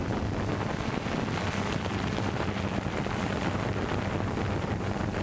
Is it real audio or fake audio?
real